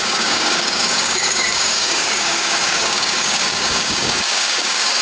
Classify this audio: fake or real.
fake